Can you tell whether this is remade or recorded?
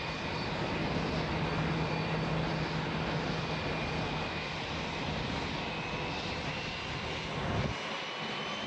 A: recorded